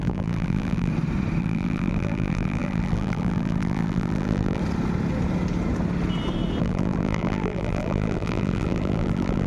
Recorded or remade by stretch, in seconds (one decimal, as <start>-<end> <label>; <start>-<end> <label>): 0.0-0.9 remade; 0.9-1.4 recorded; 1.4-4.6 remade; 4.6-6.6 recorded; 6.6-9.5 remade